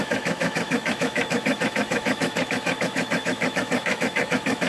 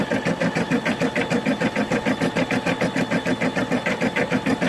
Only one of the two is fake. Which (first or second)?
first